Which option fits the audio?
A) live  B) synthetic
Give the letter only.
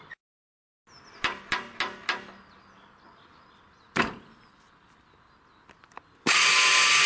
A